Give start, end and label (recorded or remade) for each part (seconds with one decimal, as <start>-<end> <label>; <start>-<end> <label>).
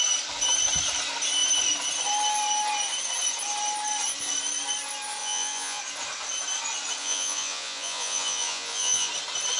0.0-5.2 recorded; 5.2-5.8 remade; 5.8-7.0 recorded; 7.0-9.1 remade; 9.1-9.6 recorded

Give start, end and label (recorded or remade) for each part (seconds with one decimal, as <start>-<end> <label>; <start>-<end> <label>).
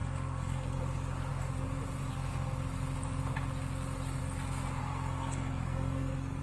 0.0-0.8 remade; 0.8-4.8 recorded; 4.8-6.4 remade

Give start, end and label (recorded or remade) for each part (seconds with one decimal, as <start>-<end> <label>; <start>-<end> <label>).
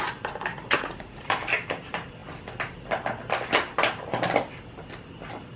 0.0-0.5 recorded; 0.5-1.3 remade; 1.3-5.6 recorded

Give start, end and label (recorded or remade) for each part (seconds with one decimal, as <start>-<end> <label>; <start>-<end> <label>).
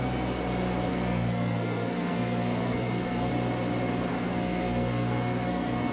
0.0-0.9 recorded; 0.9-3.3 remade; 3.3-4.1 recorded; 4.1-5.9 remade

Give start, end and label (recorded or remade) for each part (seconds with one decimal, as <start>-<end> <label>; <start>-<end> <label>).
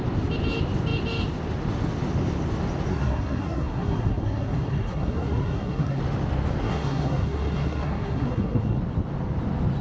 0.0-2.9 recorded; 2.9-6.0 remade; 6.0-6.6 recorded; 6.6-8.8 remade; 8.8-9.8 recorded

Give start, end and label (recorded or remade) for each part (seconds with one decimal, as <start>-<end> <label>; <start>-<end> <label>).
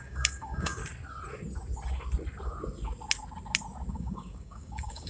0.0-0.8 remade; 0.8-3.9 recorded; 3.9-5.1 remade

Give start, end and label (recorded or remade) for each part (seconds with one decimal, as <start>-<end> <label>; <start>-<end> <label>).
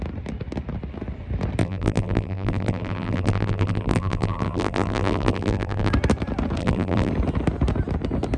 0.0-1.6 recorded; 1.6-5.9 remade; 5.9-6.6 recorded; 6.6-7.1 remade; 7.1-8.4 recorded